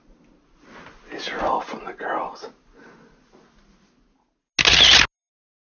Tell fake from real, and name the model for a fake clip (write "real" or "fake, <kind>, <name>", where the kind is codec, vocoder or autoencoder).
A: real